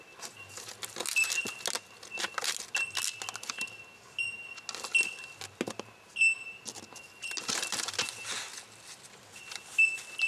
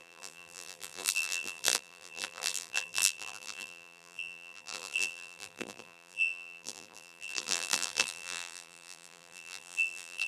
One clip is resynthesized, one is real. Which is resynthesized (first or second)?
second